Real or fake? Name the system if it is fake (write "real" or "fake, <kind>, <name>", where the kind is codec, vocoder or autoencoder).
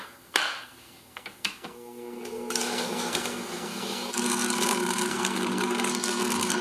fake, codec, SNAC